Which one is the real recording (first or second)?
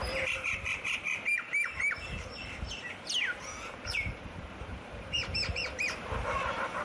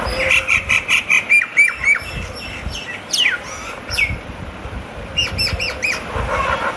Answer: second